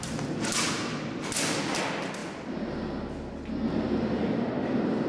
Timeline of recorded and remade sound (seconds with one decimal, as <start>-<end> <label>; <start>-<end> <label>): 0.0-5.1 recorded